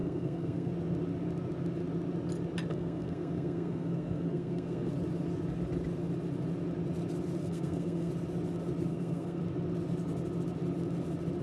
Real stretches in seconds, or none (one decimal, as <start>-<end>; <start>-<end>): 0.7-2.7; 4.9-7.4; 8.1-8.9; 9.4-11.4

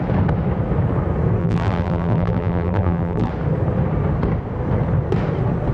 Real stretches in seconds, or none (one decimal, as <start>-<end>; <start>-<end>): 0.0-1.4; 3.3-5.7

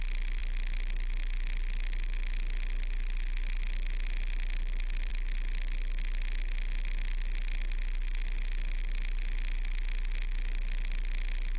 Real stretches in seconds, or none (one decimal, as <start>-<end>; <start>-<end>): 0.0-11.6

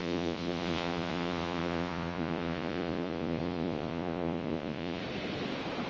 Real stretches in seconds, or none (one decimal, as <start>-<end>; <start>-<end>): 5.0-5.9

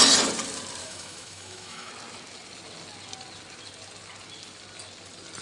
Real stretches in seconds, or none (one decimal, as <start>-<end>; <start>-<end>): 0.0-0.8; 1.9-5.4

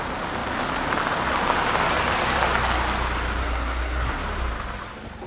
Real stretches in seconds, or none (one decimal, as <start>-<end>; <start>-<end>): 0.0-3.4; 4.2-5.3

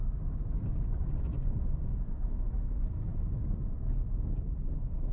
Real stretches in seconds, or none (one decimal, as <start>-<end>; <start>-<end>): 0.0-0.7; 1.9-5.1